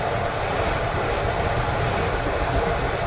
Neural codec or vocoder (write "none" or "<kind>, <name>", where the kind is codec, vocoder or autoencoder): none